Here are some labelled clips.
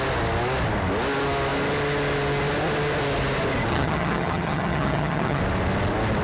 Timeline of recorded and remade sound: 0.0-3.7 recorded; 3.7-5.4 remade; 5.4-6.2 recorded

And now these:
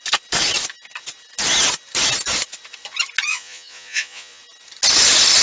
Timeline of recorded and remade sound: 0.0-3.3 recorded; 3.3-4.4 remade; 4.4-5.4 recorded

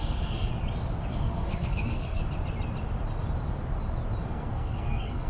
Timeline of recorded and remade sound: 0.0-0.5 remade; 0.5-1.1 recorded; 1.1-2.2 remade; 2.2-4.2 recorded; 4.2-5.3 remade

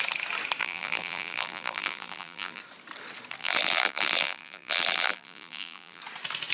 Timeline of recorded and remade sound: 0.0-0.6 recorded; 0.6-2.6 remade; 2.6-3.4 recorded; 3.4-6.0 remade; 6.0-6.5 recorded

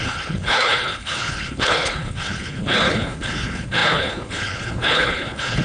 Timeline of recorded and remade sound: 0.0-5.6 remade

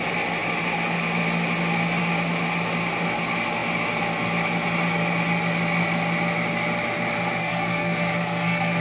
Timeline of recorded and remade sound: 0.0-7.4 recorded; 7.4-8.8 remade

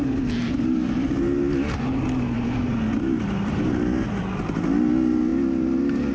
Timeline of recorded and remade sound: 0.0-2.7 recorded; 2.7-3.6 remade; 3.6-6.1 recorded

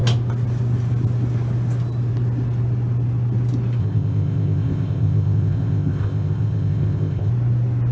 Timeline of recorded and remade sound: 0.0-3.8 recorded; 3.8-7.3 remade; 7.3-7.9 recorded